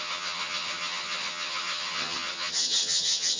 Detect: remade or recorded remade